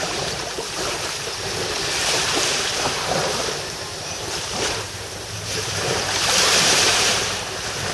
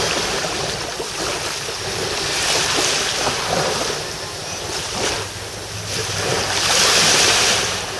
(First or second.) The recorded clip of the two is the second